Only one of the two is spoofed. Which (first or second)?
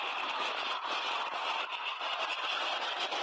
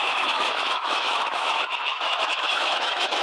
second